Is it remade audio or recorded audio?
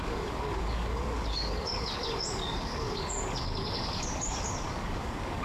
remade